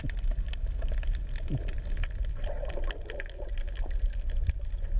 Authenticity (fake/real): real